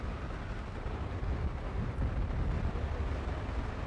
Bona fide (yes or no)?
yes